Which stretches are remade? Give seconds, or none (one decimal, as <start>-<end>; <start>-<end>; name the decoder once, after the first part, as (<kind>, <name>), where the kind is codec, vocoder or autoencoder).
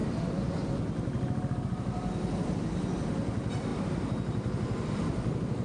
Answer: none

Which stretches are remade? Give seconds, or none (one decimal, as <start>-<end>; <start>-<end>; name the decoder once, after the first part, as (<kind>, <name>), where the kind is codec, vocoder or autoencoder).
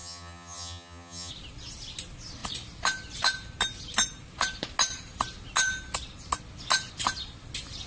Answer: 0.0-1.3 (vocoder, HiFi-GAN)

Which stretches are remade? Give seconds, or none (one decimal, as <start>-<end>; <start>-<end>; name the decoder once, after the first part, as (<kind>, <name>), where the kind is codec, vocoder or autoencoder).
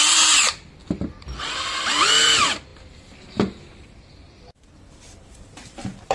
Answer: 0.0-0.8 (vocoder, BigVGAN v2); 2.2-6.1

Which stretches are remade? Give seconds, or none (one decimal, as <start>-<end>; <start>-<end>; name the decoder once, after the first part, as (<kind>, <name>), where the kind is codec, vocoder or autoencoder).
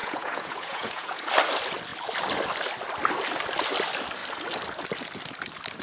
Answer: 0.0-1.2 (vocoder, Vocos)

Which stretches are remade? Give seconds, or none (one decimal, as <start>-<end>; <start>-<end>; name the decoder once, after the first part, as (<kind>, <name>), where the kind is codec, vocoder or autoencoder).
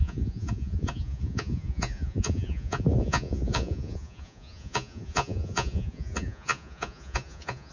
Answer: 0.0-7.7 (vocoder, Vocos)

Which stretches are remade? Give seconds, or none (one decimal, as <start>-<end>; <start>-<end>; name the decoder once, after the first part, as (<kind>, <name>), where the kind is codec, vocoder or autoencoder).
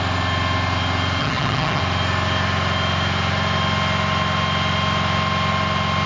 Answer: 1.2-1.8 (vocoder, HiFi-GAN)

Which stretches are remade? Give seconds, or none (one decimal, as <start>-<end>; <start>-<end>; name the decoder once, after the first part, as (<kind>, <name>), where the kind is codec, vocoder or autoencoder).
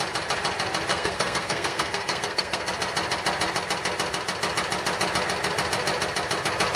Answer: 0.9-2.7 (codec, SNAC)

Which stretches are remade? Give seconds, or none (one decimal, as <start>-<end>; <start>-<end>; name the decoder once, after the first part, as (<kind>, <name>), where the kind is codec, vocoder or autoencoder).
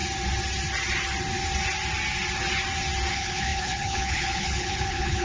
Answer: 3.1-5.2 (codec, HILCodec)